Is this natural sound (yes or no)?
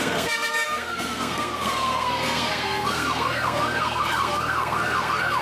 no